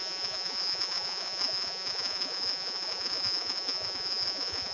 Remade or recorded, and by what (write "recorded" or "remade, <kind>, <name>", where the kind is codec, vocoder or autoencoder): remade, vocoder, Vocos